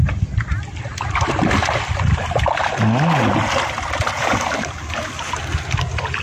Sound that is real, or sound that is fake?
real